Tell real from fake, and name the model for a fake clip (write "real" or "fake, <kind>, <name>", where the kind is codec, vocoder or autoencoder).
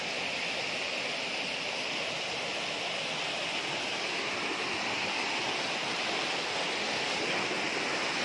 real